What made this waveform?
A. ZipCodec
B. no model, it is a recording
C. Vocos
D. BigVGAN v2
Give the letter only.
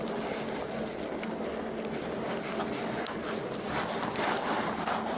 B